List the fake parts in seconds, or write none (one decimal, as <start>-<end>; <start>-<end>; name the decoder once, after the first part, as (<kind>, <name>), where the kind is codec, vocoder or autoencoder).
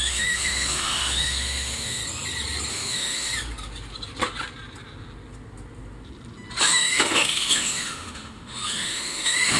0.0-2.0 (autoencoder, DAC-VAE); 2.7-3.3; 6.6-9.6